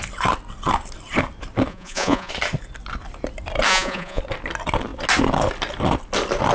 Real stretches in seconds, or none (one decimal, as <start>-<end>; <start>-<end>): 0.0-1.7; 2.3-3.7; 4.2-6.5